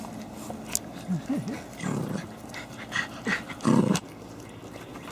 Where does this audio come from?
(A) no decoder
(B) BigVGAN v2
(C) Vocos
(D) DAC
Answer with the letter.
A